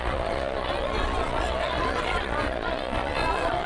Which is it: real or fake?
fake